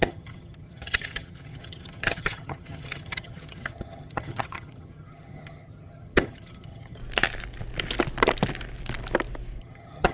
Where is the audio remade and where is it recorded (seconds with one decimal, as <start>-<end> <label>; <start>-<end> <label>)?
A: 0.0-7.0 remade; 7.0-9.6 recorded; 9.6-10.1 remade